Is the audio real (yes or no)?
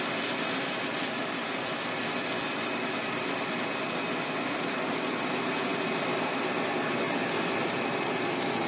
no